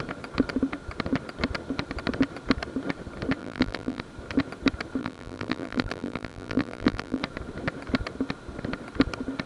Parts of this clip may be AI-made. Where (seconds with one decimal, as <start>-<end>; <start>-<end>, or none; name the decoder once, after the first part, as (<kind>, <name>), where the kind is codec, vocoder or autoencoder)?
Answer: 3.4-4.0 (vocoder, BigVGAN v2); 5.0-7.2